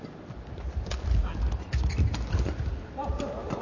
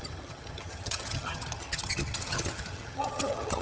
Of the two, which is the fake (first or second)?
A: second